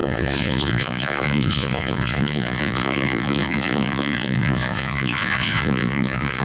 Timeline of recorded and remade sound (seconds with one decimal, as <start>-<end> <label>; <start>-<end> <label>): 0.0-6.4 remade